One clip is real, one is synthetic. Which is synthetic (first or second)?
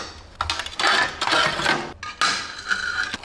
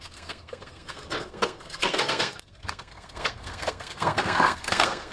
second